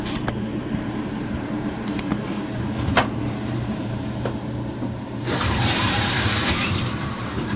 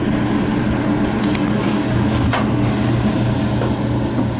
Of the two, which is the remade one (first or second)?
first